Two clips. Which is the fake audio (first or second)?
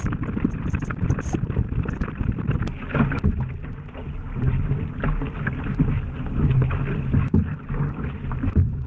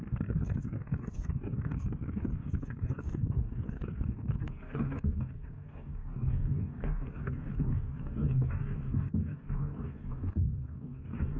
second